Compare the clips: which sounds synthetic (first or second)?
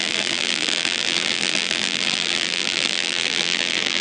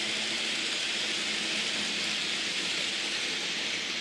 first